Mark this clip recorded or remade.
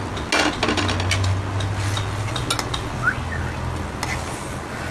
recorded